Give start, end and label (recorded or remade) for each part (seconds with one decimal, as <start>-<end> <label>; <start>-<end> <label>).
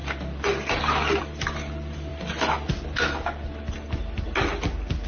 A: 0.0-5.1 recorded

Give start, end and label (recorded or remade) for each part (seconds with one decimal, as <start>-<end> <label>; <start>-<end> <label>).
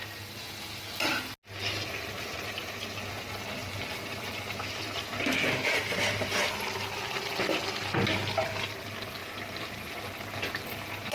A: 0.0-3.6 recorded; 3.6-4.4 remade; 4.4-5.9 recorded; 5.9-6.5 remade; 6.5-9.2 recorded; 9.2-10.1 remade; 10.1-11.1 recorded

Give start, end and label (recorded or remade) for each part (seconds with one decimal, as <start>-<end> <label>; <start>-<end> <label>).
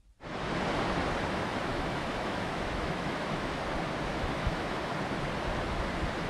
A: 0.0-1.7 recorded; 1.7-3.6 remade; 3.6-4.1 recorded; 4.1-4.9 remade; 4.9-6.3 recorded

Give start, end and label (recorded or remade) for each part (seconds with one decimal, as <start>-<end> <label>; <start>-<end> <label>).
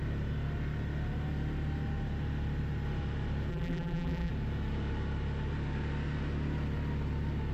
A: 0.0-3.5 recorded; 3.5-4.3 remade; 4.3-7.5 recorded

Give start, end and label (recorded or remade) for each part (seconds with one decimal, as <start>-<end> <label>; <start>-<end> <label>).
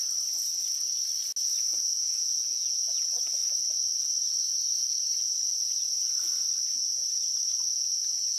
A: 0.0-1.9 recorded; 1.9-3.0 remade; 3.0-8.4 recorded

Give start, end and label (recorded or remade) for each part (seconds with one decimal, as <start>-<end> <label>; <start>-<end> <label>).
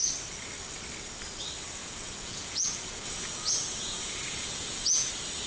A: 0.0-1.8 recorded; 1.8-5.1 remade; 5.1-5.5 recorded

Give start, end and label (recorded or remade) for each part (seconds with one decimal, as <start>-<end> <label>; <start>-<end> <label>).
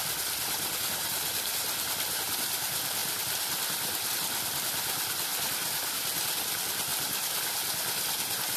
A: 0.0-5.3 remade; 5.3-6.3 recorded; 6.3-6.9 remade; 6.9-8.6 recorded